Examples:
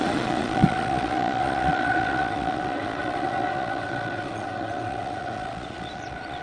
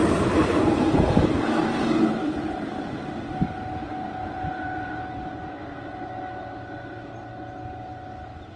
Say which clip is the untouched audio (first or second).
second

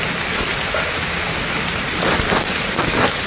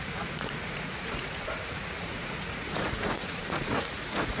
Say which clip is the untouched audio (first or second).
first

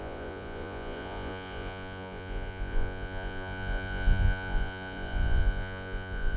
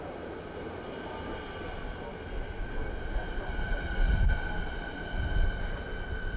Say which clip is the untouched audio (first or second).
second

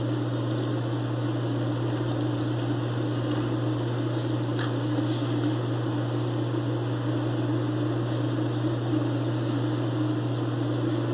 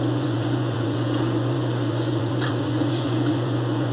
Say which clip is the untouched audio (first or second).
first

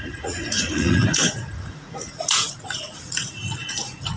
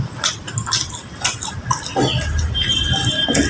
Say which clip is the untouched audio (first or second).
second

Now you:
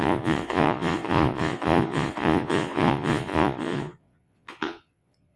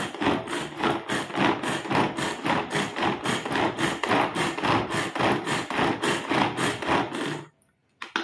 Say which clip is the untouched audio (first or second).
second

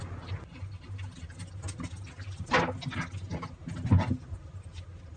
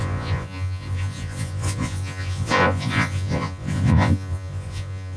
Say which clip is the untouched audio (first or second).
first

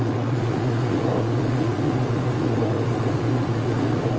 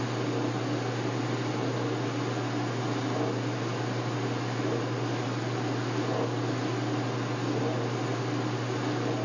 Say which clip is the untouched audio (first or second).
second